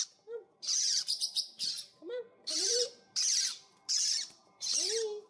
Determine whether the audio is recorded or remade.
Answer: remade